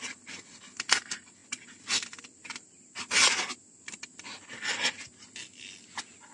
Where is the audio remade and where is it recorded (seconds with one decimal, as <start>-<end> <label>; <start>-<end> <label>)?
0.0-6.3 recorded